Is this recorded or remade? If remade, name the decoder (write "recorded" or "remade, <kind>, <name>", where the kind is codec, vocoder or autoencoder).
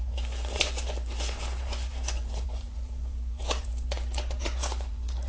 remade, vocoder, Vocos